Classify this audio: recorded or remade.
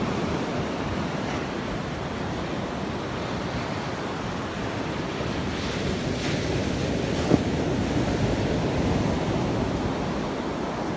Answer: recorded